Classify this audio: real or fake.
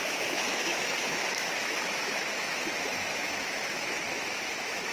fake